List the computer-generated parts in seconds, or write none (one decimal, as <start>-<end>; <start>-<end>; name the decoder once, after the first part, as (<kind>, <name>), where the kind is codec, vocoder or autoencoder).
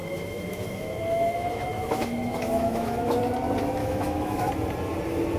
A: 0.0-3.2 (autoencoder, DAC-VAE); 3.8-4.5